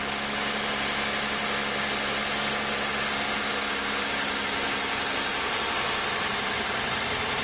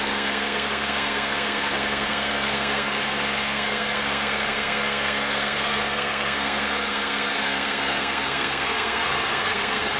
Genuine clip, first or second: first